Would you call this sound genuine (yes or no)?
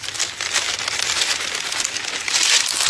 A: yes